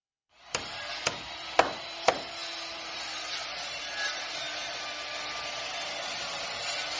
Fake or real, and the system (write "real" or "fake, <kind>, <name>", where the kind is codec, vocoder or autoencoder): real